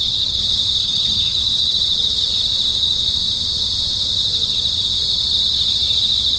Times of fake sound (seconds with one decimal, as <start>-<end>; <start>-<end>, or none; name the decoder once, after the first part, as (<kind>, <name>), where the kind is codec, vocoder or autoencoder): 0.8-1.4 (vocoder, HiFi-GAN)